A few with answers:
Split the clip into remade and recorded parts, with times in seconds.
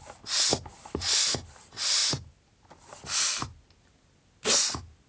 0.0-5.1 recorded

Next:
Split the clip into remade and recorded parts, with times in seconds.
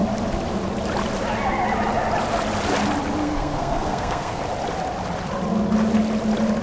0.0-3.2 recorded; 3.2-4.4 remade; 4.4-6.6 recorded